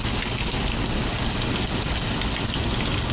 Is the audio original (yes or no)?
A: yes